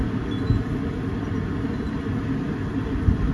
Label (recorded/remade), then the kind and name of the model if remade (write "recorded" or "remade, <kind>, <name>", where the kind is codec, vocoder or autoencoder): recorded